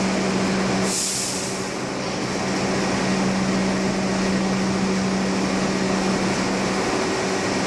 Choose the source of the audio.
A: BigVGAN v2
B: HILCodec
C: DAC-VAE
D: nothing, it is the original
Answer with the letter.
D